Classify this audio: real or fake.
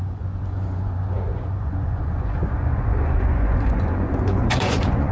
fake